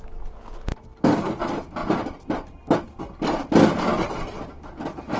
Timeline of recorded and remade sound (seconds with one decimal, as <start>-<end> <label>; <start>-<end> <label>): 0.0-0.7 recorded; 0.7-1.4 remade; 1.4-1.8 recorded; 1.8-3.5 remade; 3.5-5.2 recorded